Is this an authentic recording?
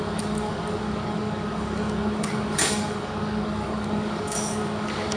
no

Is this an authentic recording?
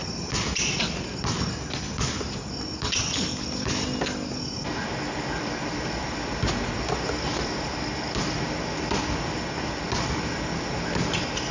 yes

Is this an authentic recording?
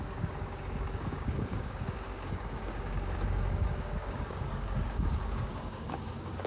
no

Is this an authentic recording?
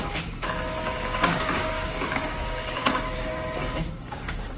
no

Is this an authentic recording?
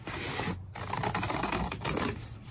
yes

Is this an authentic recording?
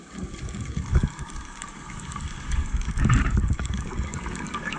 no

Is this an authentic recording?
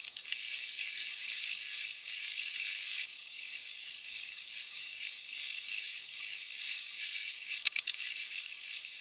no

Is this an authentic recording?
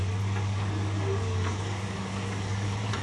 no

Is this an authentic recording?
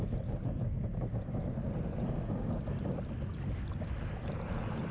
yes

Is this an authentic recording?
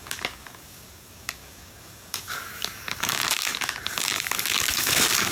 no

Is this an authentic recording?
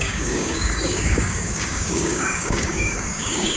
no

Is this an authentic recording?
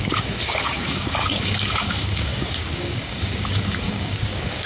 no